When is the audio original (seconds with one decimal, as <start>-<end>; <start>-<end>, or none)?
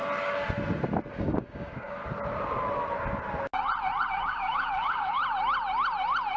0.0-1.1; 2.0-4.1; 5.2-6.4